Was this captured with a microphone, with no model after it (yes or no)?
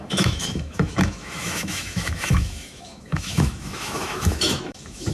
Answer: no